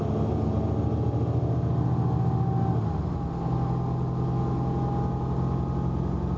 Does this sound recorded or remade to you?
recorded